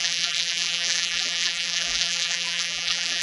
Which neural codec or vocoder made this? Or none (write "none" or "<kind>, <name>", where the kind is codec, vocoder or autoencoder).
vocoder, BigVGAN v2